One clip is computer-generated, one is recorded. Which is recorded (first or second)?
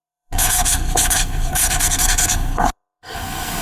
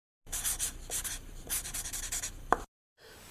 second